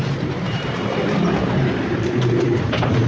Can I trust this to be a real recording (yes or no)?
no